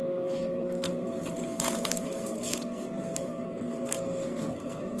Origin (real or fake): fake